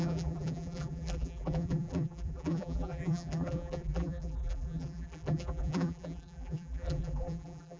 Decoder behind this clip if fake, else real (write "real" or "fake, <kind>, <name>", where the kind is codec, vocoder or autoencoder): fake, vocoder, BigVGAN v2